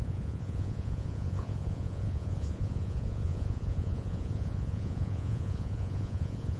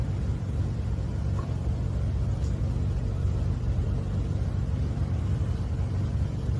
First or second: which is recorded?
second